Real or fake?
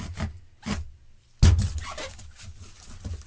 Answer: real